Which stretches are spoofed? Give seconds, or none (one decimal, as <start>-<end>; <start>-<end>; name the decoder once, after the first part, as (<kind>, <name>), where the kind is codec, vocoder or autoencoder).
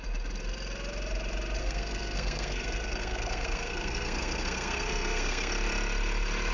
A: 1.6-5.5 (codec, SNAC)